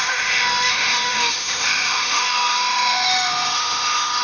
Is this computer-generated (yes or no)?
yes